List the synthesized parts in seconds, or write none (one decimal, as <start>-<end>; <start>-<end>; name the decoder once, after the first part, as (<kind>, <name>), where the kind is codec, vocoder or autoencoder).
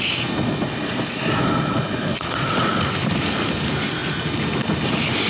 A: 0.4-2.8 (vocoder, Vocos)